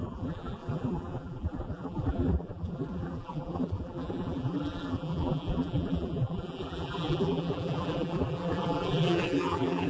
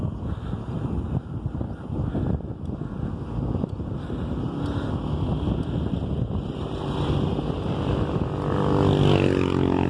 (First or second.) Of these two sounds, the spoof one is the first